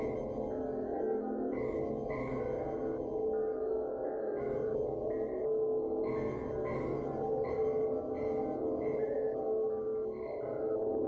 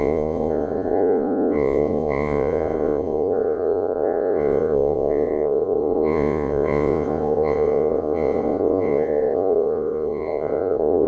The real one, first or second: first